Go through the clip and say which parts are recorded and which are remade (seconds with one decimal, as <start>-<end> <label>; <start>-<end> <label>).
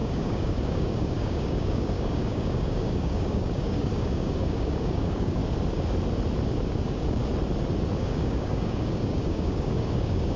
0.0-5.4 remade; 5.4-6.7 recorded; 6.7-7.2 remade; 7.2-8.0 recorded; 8.0-10.4 remade